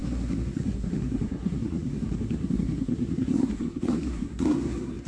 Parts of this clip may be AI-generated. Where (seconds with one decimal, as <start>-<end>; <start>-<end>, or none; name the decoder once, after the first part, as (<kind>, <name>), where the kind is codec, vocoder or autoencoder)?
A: 0.0-5.1 (codec, SNAC)